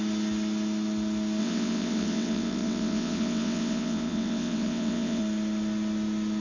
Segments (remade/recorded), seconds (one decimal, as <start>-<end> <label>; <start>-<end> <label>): 0.0-1.4 recorded; 1.4-5.2 remade; 5.2-6.4 recorded